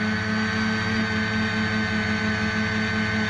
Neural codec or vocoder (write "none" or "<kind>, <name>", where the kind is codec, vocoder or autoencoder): none